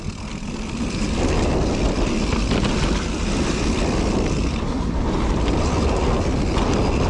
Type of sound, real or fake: real